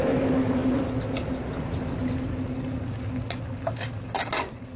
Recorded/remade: recorded